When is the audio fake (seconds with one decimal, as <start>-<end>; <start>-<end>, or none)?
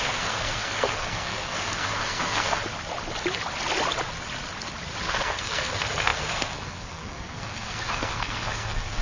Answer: 0.0-2.6; 5.0-9.0